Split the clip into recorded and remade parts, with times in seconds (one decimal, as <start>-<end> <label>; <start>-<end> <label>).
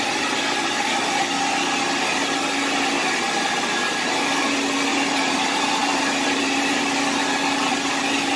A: 0.0-4.9 recorded; 4.9-6.8 remade; 6.8-8.4 recorded